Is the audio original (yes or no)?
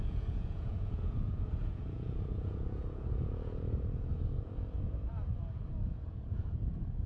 no